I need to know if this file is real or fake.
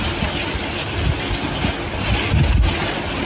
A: real